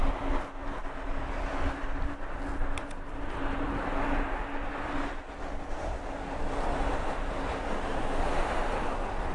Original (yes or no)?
yes